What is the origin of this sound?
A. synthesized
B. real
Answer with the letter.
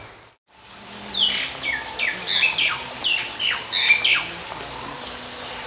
B